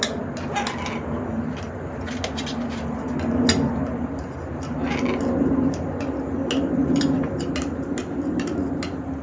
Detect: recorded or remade recorded